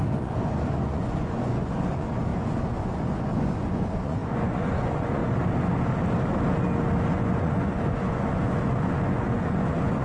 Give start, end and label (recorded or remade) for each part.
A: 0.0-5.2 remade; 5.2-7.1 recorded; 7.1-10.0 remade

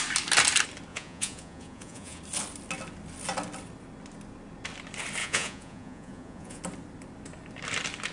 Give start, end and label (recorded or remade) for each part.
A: 0.0-0.9 recorded; 0.9-2.2 remade; 2.2-5.2 recorded; 5.2-6.6 remade; 6.6-8.1 recorded

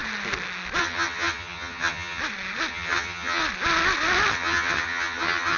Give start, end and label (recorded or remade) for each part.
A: 0.0-0.8 recorded; 0.8-2.2 remade; 2.2-2.7 recorded; 2.7-3.4 remade; 3.4-4.3 recorded; 4.3-5.6 remade

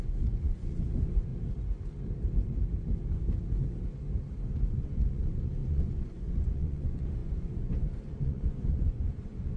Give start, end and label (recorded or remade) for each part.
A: 0.0-1.3 remade; 1.3-4.7 recorded; 4.7-9.6 remade

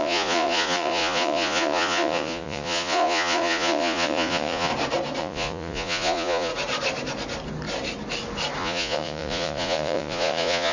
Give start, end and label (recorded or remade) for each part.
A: 0.0-4.7 remade; 4.7-5.2 recorded; 5.2-6.5 remade; 6.5-8.6 recorded; 8.6-10.7 remade